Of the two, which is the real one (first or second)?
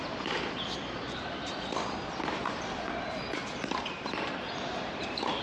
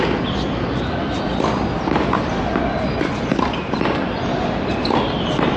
second